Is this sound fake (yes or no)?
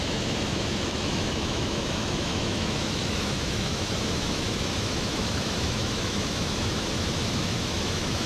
yes